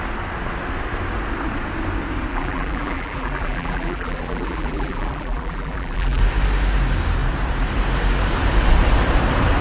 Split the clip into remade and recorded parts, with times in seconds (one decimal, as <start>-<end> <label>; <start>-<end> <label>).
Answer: 0.0-2.3 recorded; 2.3-6.2 remade; 6.2-9.6 recorded